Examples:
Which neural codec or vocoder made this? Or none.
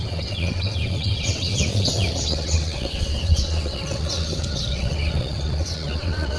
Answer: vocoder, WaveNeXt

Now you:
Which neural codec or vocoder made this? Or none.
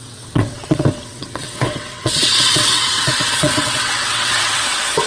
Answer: vocoder, WaveNeXt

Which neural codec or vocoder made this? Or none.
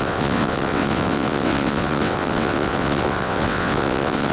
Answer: vocoder, WaveNeXt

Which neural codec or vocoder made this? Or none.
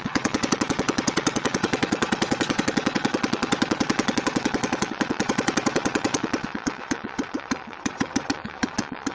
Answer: vocoder, WaveNeXt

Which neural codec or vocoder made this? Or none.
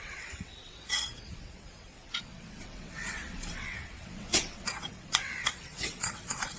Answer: vocoder, WaveNeXt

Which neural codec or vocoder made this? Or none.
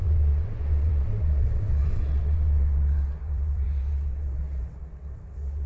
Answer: vocoder, WaveNeXt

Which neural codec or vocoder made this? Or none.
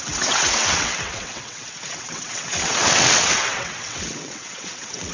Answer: vocoder, WaveNeXt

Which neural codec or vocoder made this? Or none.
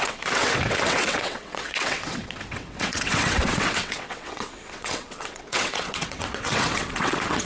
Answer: vocoder, WaveNeXt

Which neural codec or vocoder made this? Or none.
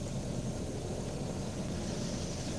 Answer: none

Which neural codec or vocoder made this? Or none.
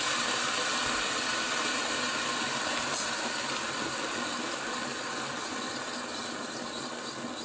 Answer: none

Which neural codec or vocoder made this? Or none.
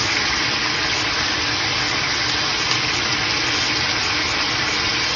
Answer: none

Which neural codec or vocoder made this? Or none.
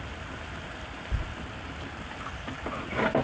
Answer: none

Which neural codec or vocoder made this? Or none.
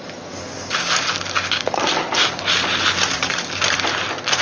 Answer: none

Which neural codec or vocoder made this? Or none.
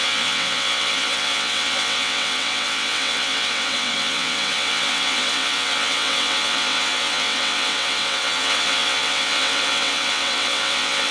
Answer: vocoder, WaveNeXt